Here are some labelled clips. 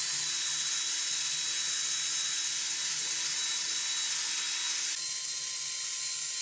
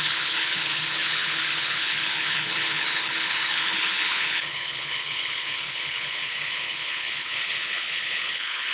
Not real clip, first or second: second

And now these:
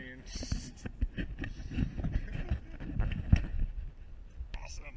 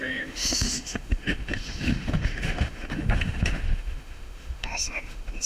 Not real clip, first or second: second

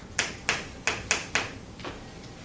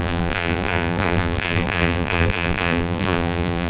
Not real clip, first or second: second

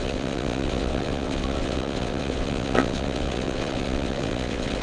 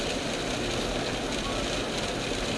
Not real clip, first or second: first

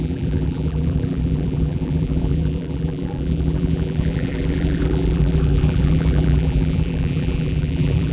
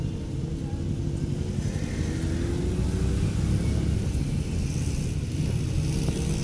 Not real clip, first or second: first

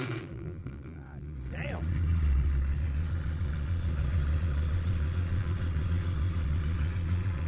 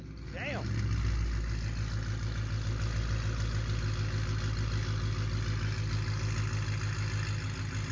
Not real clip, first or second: first